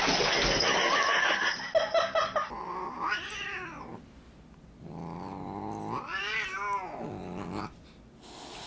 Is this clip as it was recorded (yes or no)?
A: yes